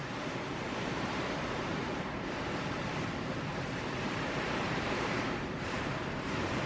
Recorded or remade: remade